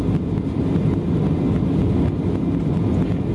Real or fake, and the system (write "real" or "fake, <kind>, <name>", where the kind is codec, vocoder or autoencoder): real